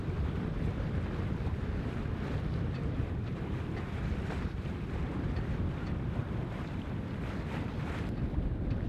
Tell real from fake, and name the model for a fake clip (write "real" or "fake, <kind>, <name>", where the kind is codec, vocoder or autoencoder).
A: fake, vocoder, BigVGAN v2